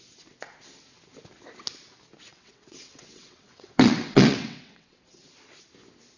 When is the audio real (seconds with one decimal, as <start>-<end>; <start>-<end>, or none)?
0.0-2.3; 5.0-6.2